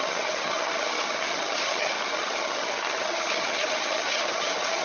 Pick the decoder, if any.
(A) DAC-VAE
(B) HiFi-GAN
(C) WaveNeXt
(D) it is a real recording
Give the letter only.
B